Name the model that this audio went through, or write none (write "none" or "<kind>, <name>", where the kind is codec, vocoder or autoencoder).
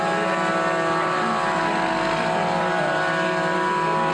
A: none